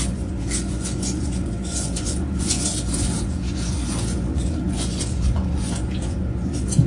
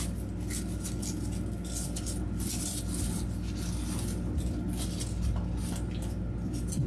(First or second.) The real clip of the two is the second